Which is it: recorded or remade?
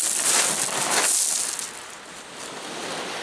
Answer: recorded